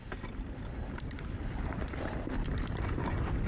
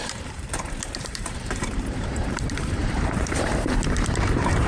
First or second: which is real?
first